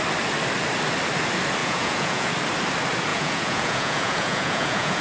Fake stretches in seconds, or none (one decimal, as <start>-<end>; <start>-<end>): 1.6-2.3; 3.1-5.0